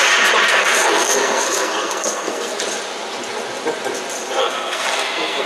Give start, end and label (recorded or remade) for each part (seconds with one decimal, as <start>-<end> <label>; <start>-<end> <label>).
0.0-0.5 recorded; 0.5-2.6 remade; 2.6-4.4 recorded; 4.4-5.5 remade

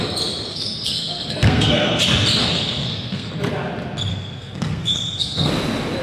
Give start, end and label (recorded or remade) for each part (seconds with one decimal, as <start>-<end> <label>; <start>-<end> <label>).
0.0-0.5 recorded; 0.5-2.0 remade; 2.0-2.4 recorded; 2.4-3.3 remade; 3.3-4.1 recorded; 4.1-5.5 remade; 5.5-6.0 recorded

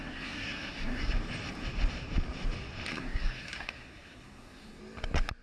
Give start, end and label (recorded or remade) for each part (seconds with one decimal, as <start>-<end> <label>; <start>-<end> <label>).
0.0-1.1 remade; 1.1-2.9 recorded; 2.9-4.8 remade; 4.8-5.4 recorded

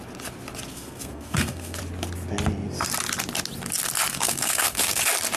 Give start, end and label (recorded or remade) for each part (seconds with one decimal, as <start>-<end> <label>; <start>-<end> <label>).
0.0-0.7 recorded; 0.7-1.8 remade; 1.8-4.1 recorded; 4.1-5.0 remade; 5.0-5.4 recorded

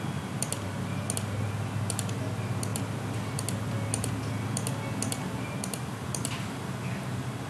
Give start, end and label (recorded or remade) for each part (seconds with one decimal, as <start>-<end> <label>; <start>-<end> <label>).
0.0-7.5 recorded

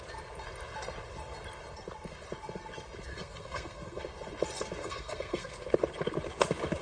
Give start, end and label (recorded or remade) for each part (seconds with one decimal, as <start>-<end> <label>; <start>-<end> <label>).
0.0-3.1 recorded; 3.1-4.0 remade; 4.0-4.8 recorded; 4.8-5.7 remade; 5.7-6.8 recorded

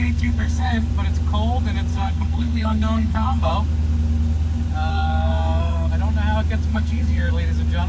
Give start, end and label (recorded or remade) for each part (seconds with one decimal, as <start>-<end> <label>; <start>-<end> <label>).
0.0-0.9 remade; 0.9-1.9 recorded; 1.9-3.5 remade; 3.5-4.9 recorded; 4.9-5.9 remade; 5.9-6.7 recorded; 6.7-7.3 remade; 7.3-7.9 recorded